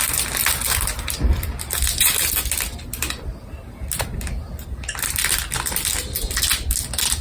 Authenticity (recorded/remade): recorded